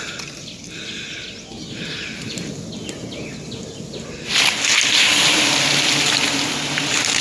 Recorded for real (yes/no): yes